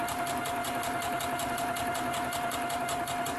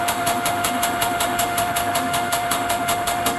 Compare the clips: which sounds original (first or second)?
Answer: first